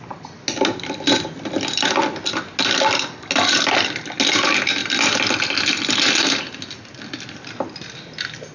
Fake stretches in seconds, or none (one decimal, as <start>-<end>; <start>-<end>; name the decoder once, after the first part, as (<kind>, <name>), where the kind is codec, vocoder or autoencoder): 4.8-6.5 (vocoder, BigVGAN v2)